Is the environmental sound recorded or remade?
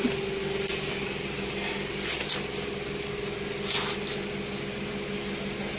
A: recorded